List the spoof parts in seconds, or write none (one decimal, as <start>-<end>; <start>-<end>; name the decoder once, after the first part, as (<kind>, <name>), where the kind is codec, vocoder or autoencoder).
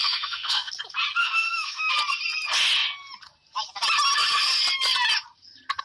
0.0-0.7 (autoencoder, DAC-VAE); 1.2-1.9